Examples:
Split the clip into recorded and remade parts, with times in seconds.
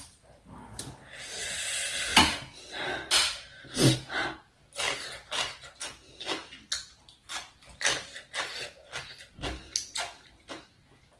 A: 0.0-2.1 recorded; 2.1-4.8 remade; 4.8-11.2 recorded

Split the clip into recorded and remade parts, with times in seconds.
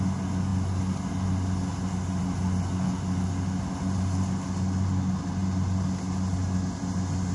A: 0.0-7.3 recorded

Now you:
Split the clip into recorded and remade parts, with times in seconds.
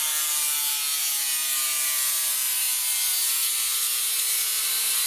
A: 0.0-5.1 recorded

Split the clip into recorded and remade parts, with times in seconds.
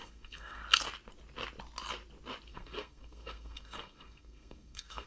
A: 0.0-0.6 remade; 0.6-2.5 recorded; 2.5-5.1 remade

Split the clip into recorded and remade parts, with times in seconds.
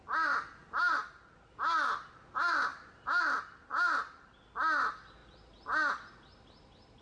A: 0.0-7.0 recorded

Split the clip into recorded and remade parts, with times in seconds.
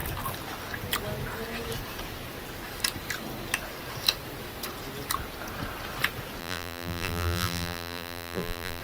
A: 0.0-6.4 recorded; 6.4-8.8 remade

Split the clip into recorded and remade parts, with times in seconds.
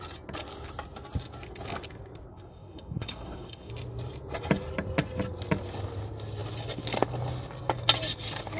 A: 0.0-2.3 recorded; 2.3-3.7 remade; 3.7-8.6 recorded